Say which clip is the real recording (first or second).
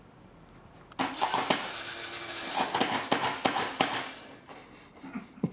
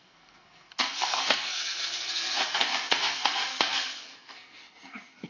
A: first